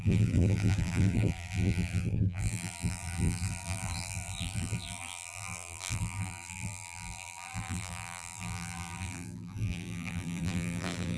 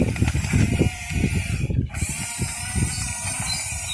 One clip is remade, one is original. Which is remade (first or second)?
first